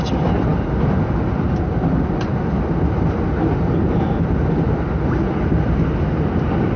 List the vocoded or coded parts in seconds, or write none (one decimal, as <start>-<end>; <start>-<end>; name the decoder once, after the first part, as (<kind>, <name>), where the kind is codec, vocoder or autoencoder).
none